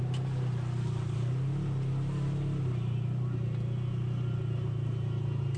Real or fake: real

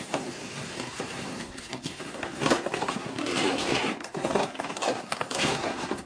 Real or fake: fake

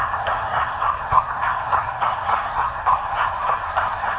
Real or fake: fake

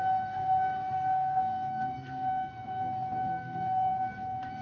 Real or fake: fake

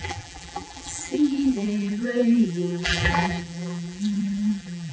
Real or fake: fake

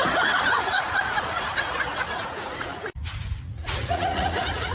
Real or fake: fake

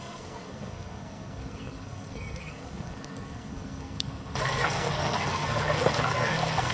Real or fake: fake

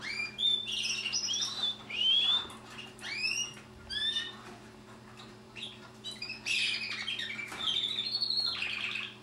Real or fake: fake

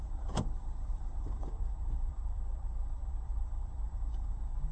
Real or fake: fake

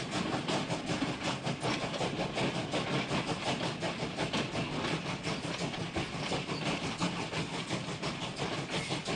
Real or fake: real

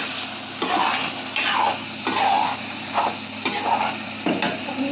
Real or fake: real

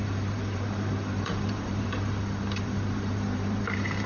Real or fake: fake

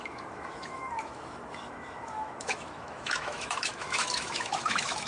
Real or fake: fake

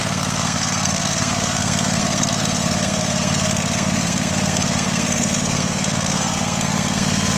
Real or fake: fake